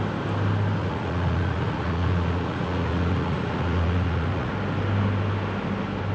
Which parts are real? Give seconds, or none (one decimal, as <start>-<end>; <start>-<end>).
0.0-0.8; 4.5-6.1